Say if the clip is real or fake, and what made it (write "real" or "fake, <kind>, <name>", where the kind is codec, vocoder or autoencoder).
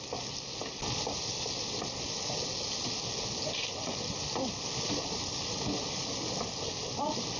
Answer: real